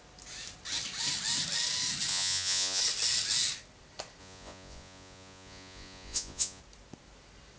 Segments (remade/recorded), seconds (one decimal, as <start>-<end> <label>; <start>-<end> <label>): 0.0-2.1 recorded; 2.1-2.8 remade; 2.8-4.2 recorded; 4.2-6.6 remade; 6.6-7.6 recorded